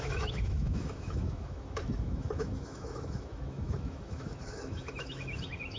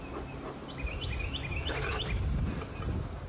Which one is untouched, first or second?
second